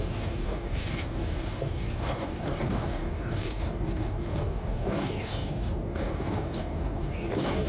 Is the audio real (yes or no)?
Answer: no